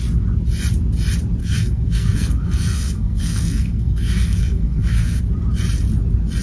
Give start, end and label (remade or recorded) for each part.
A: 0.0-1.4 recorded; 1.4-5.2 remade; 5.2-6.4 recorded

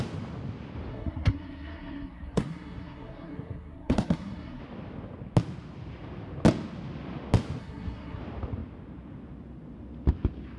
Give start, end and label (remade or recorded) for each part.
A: 0.0-0.9 recorded; 0.9-4.6 remade; 4.6-7.6 recorded; 7.6-8.2 remade; 8.2-10.6 recorded

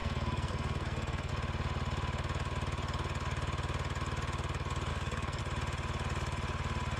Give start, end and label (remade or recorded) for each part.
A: 0.0-1.3 remade; 1.3-4.9 recorded; 4.9-5.4 remade; 5.4-7.0 recorded

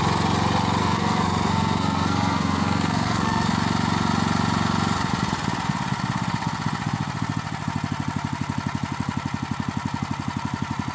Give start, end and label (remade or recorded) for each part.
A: 0.0-0.8 recorded; 0.8-3.5 remade; 3.5-10.9 recorded

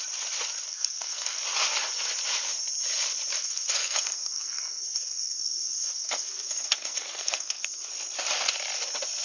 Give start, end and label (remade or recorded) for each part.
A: 0.0-0.7 recorded; 0.7-1.4 remade; 1.4-3.4 recorded; 3.4-7.9 remade; 7.9-9.2 recorded

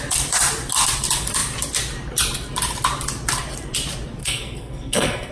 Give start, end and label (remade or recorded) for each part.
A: 0.0-4.2 recorded; 4.2-5.3 remade

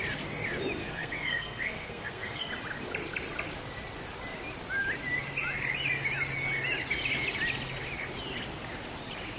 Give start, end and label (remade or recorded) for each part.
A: 0.0-0.8 recorded; 0.8-2.5 remade; 2.5-9.4 recorded